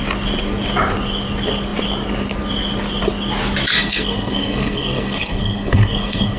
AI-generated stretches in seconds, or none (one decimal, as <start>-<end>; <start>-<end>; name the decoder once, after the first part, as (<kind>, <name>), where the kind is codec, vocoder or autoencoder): 3.7-6.4 (codec, SNAC)